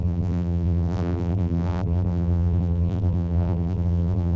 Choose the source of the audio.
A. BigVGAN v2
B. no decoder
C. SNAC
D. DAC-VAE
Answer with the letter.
A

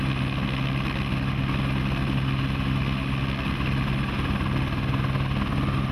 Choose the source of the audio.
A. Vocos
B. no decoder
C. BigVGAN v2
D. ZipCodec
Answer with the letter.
B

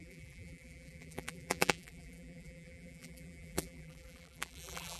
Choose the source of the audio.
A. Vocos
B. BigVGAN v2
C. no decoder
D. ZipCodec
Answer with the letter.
B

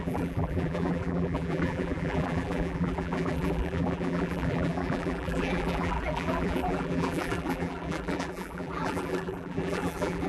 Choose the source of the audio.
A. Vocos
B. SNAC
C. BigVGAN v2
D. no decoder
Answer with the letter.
C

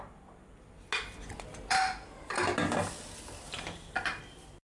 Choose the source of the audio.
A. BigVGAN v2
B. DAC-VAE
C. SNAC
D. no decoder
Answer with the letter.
D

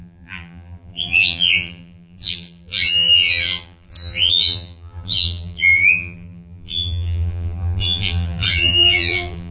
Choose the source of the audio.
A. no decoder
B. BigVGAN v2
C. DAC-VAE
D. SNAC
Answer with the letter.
B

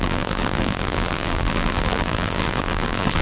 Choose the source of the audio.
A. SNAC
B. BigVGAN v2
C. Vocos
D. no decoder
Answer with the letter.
B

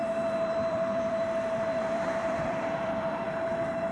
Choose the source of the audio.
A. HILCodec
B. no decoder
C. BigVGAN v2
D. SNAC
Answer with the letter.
C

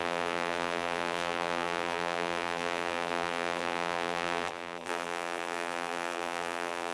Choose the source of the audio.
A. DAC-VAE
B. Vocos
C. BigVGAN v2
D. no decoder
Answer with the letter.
C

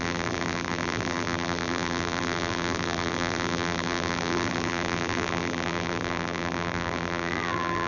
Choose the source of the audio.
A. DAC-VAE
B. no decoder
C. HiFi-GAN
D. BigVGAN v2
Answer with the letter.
D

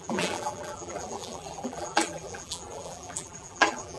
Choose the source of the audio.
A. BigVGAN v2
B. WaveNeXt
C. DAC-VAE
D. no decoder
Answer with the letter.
A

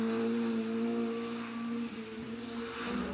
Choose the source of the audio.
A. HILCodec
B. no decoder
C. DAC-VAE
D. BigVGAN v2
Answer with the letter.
B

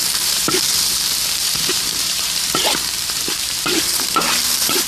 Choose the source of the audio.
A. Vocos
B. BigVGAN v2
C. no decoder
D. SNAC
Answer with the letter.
B